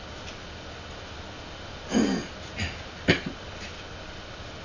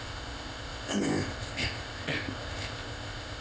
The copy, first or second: second